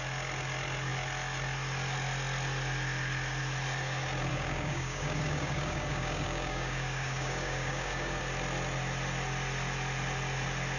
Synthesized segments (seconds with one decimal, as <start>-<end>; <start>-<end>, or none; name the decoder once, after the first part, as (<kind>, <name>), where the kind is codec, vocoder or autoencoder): 4.3-8.2 (codec, DAC)